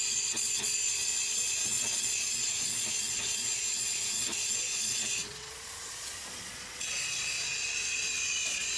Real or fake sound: fake